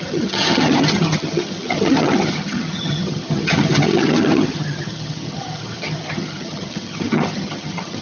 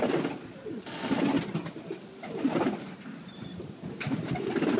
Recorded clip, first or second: second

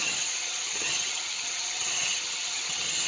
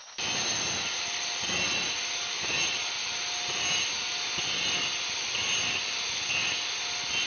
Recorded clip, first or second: second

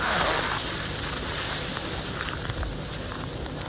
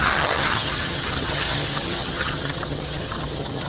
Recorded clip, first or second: first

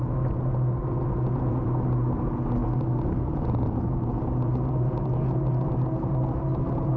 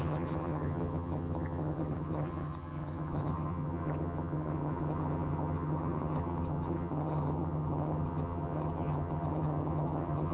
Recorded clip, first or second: first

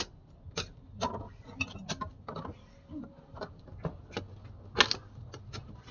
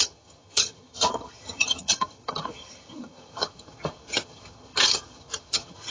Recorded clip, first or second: first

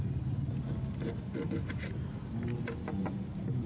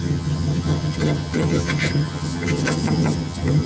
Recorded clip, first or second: first